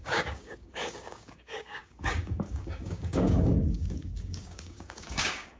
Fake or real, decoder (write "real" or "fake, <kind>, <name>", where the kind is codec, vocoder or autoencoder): fake, codec, DAC